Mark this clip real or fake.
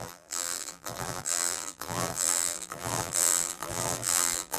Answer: fake